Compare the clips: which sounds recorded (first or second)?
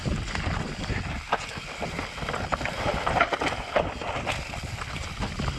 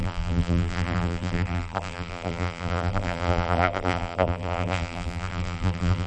first